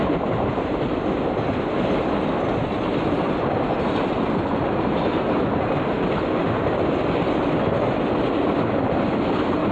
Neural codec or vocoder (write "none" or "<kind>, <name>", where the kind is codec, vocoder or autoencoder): none